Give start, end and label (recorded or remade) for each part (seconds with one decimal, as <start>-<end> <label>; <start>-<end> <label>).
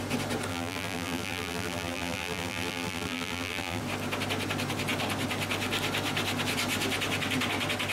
0.0-0.5 recorded; 0.5-3.8 remade; 3.8-7.9 recorded